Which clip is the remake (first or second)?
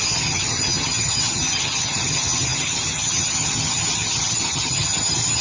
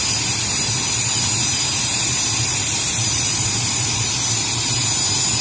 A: first